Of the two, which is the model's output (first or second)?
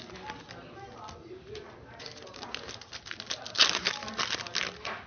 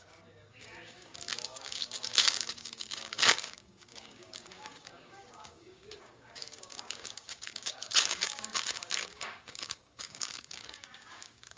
second